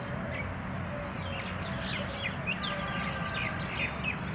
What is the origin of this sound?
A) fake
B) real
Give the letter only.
B